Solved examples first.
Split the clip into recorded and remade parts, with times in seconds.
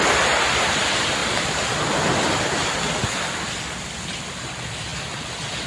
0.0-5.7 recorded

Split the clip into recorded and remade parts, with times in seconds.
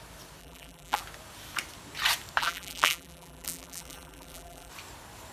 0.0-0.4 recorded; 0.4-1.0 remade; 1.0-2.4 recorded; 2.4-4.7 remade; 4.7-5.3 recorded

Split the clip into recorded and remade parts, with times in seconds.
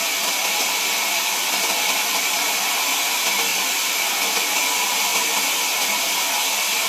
0.0-3.5 recorded; 3.5-4.3 remade; 4.3-6.9 recorded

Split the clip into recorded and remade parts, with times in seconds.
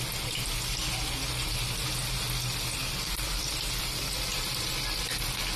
0.0-4.3 recorded; 4.3-5.0 remade; 5.0-5.6 recorded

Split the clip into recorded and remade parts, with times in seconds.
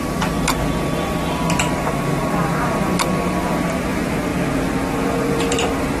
0.0-4.3 remade; 4.3-4.9 recorded; 4.9-6.0 remade